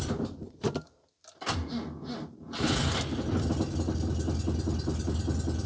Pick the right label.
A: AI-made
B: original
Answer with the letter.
B